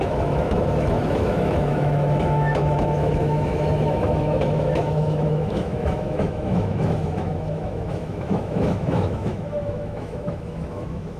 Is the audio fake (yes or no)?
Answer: yes